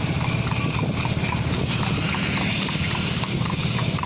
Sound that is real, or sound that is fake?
real